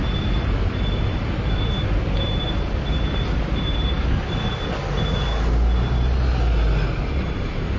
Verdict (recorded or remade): recorded